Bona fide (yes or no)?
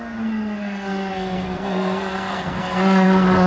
no